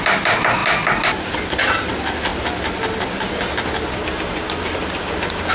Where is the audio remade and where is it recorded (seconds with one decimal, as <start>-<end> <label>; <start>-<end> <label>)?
0.0-5.5 recorded